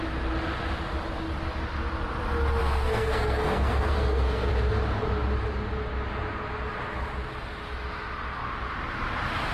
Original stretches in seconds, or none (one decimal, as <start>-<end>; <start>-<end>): 0.0-2.6; 4.5-9.5